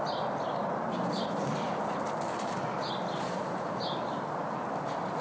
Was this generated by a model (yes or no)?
no